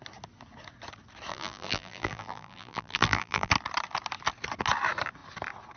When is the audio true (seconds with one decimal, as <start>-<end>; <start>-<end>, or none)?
0.0-1.3; 3.5-5.8